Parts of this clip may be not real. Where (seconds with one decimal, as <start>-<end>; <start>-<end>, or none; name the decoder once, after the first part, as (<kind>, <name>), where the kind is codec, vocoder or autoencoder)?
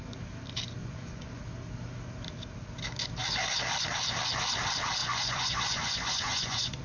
0.8-1.4 (vocoder, Vocos); 5.0-6.8